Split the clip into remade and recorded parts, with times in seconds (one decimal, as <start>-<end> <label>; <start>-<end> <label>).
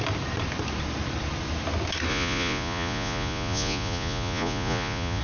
0.0-2.1 recorded; 2.1-5.2 remade